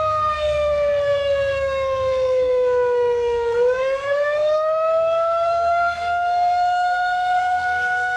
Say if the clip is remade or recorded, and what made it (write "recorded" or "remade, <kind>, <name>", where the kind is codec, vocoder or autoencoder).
remade, codec, SNAC